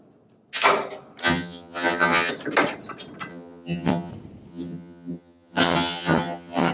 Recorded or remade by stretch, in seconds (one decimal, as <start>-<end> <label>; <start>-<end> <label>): 0.0-1.2 recorded; 1.2-2.3 remade; 2.3-3.3 recorded; 3.3-4.1 remade; 4.1-4.5 recorded; 4.5-6.7 remade